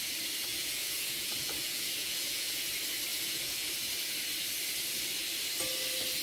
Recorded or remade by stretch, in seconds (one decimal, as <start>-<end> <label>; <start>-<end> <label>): 0.0-0.5 recorded; 0.5-2.7 remade; 2.7-3.1 recorded; 3.1-3.7 remade; 3.7-6.2 recorded